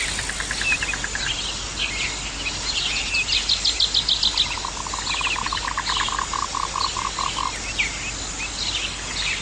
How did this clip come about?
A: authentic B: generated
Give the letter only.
A